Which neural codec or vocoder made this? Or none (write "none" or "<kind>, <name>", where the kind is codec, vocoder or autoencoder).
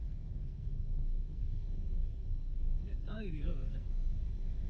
codec, SNAC